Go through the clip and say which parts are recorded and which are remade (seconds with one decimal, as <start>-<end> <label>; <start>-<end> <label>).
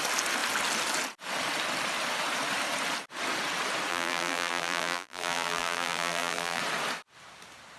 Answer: 0.0-3.9 recorded; 3.9-6.6 remade; 6.6-7.8 recorded